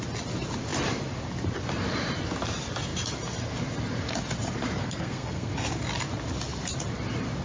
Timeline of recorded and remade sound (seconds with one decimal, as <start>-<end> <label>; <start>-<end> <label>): 0.0-4.8 recorded; 4.8-5.5 remade; 5.5-7.4 recorded